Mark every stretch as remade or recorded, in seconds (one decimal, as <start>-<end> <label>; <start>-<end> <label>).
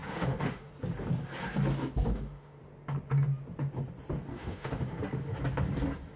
0.0-0.7 remade; 0.7-2.1 recorded; 2.1-2.6 remade; 2.6-4.3 recorded; 4.3-5.0 remade; 5.0-6.2 recorded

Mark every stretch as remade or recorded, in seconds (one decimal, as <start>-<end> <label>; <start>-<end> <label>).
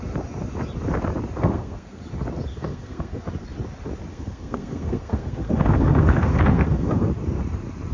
0.0-1.4 recorded; 1.4-2.0 remade; 2.0-2.5 recorded; 2.5-3.2 remade; 3.2-4.1 recorded; 4.1-7.1 remade; 7.1-7.9 recorded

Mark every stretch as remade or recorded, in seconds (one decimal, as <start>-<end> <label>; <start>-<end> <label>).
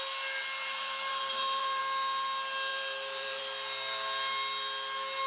0.0-0.6 recorded; 0.6-1.8 remade; 1.8-2.7 recorded; 2.7-3.4 remade; 3.4-5.3 recorded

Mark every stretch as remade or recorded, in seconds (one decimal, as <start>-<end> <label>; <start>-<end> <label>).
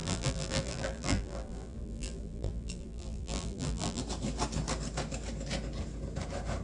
0.0-4.0 remade; 4.0-6.6 recorded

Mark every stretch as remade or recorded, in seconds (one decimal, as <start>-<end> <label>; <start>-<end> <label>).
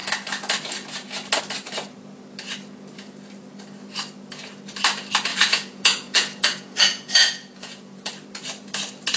0.0-5.3 recorded; 5.3-8.1 remade; 8.1-9.2 recorded